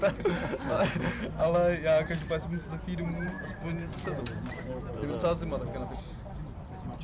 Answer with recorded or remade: recorded